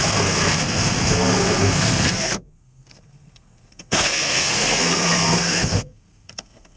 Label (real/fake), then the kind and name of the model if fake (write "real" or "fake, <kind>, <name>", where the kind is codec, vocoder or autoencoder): fake, codec, SNAC